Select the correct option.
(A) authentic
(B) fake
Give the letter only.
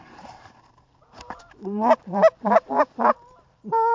B